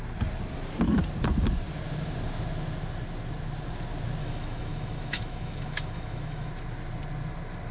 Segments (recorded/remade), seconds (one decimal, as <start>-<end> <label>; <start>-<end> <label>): 0.0-4.2 recorded; 4.2-6.5 remade; 6.5-7.7 recorded